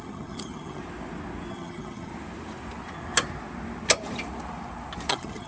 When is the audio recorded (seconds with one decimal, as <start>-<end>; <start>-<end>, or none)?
0.8-1.5; 2.1-5.1